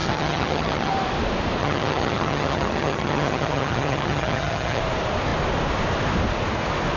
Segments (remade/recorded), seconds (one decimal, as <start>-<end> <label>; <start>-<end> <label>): 0.0-0.9 remade; 0.9-1.6 recorded; 1.6-4.8 remade; 4.8-7.0 recorded